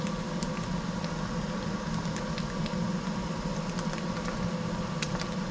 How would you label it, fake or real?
real